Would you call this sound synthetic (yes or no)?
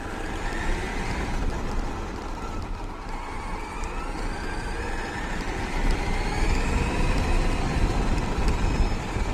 no